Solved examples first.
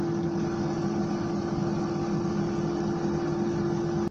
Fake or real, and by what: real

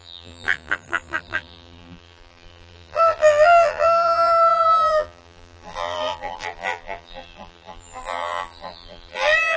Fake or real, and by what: fake, vocoder, BigVGAN v2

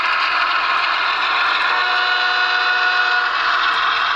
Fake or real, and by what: real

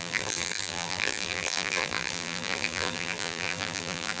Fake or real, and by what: fake, vocoder, BigVGAN v2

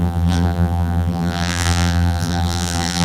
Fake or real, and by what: fake, vocoder, BigVGAN v2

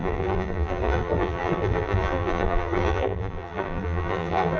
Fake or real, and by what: fake, vocoder, BigVGAN v2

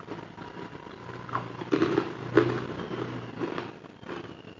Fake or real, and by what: real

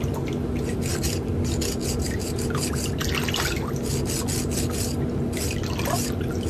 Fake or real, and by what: real